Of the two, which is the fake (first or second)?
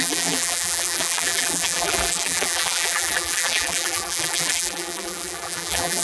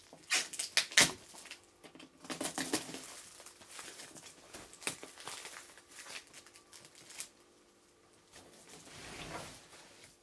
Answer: first